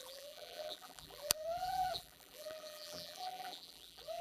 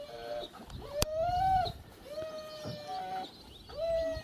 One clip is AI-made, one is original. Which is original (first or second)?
second